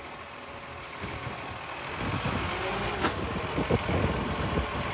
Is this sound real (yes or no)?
yes